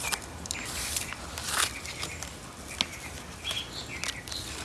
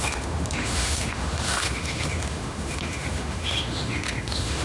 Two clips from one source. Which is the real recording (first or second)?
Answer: first